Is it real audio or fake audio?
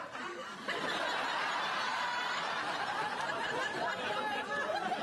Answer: fake